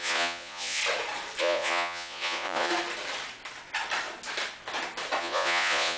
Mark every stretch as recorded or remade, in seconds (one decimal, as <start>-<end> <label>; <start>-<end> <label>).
0.0-0.8 remade; 0.8-1.4 recorded; 1.4-2.7 remade; 2.7-5.2 recorded; 5.2-6.0 remade